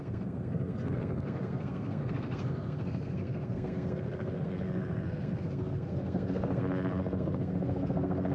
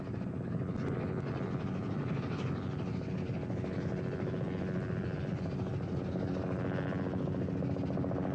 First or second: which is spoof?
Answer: first